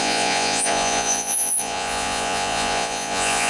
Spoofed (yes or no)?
yes